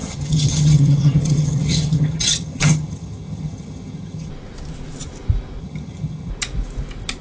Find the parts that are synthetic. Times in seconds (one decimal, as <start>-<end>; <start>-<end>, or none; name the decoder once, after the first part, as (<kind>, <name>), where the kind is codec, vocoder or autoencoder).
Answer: 0.0-4.3 (vocoder, HiFi-GAN); 5.6-6.3